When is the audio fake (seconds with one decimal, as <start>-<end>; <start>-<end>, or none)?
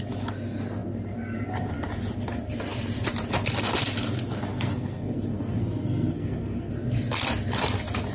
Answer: 4.5-6.7